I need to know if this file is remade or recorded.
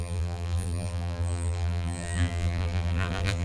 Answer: remade